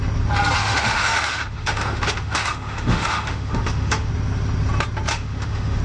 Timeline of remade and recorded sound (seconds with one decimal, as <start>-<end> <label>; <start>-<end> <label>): 0.0-0.6 recorded; 0.6-4.1 remade; 4.1-5.1 recorded; 5.1-5.8 remade